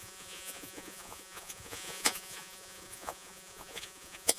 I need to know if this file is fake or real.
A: fake